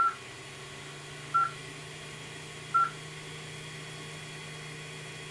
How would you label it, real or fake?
real